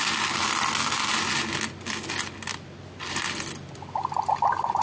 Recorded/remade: recorded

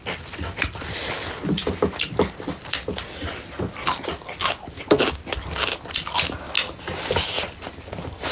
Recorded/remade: recorded